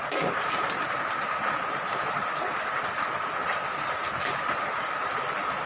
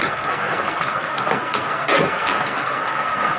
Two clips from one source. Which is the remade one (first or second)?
second